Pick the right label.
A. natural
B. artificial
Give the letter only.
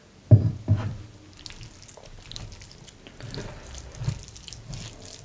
A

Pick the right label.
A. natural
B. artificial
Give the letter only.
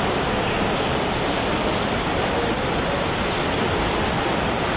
A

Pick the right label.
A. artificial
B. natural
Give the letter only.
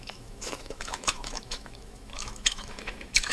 A